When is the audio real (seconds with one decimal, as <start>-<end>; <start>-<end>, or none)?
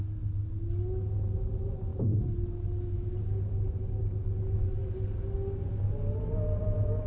0.0-7.1